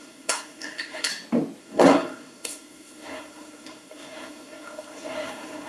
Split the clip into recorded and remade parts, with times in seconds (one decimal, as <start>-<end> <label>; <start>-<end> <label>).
0.0-1.1 remade; 1.1-1.6 recorded; 1.6-5.7 remade